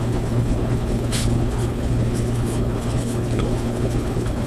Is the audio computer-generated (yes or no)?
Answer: yes